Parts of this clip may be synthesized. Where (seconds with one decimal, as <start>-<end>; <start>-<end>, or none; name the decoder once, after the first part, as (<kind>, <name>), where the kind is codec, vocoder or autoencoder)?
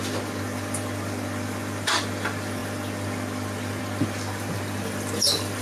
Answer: none